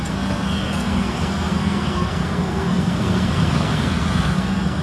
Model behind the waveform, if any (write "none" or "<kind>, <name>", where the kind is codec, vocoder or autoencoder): codec, SNAC